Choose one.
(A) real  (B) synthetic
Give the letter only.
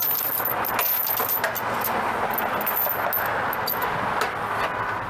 A